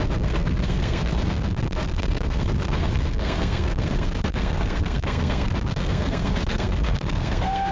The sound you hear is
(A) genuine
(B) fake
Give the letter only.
B